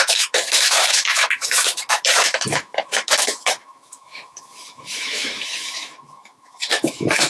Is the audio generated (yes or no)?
yes